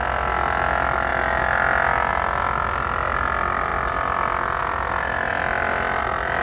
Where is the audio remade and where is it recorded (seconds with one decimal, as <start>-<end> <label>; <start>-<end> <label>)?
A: 0.0-6.4 recorded